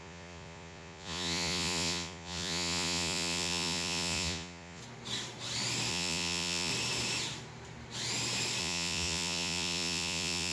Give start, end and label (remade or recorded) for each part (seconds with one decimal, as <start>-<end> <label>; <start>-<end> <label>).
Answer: 0.0-4.8 remade; 4.8-5.9 recorded; 5.9-6.7 remade; 6.7-8.6 recorded; 8.6-10.5 remade